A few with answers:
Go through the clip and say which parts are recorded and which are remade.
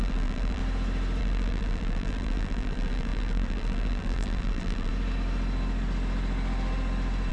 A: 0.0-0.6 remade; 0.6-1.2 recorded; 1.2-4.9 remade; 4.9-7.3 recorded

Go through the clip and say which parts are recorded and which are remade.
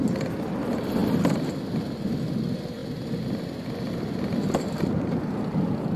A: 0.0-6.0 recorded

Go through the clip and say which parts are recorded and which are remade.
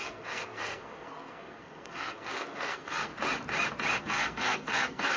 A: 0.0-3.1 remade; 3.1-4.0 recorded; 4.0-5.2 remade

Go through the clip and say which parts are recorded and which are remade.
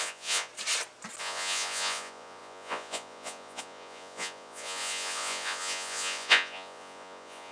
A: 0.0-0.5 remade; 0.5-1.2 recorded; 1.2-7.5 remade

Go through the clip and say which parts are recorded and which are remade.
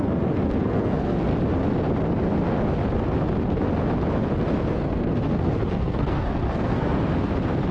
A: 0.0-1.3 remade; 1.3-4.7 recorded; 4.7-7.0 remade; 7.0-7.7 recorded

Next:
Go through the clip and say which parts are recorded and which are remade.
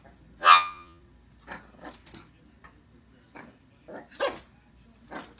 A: 0.0-0.4 recorded; 0.4-1.0 remade; 1.0-5.4 recorded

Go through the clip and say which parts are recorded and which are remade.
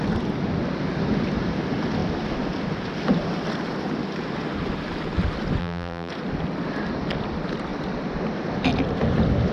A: 0.0-5.6 recorded; 5.6-6.1 remade; 6.1-9.5 recorded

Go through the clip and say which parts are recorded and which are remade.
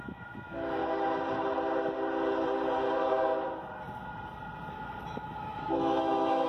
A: 0.0-0.8 remade; 0.8-4.7 recorded; 4.7-6.5 remade